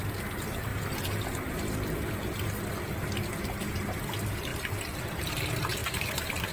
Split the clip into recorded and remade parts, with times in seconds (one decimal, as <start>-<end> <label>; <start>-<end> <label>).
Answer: 0.0-5.8 recorded; 5.8-6.5 remade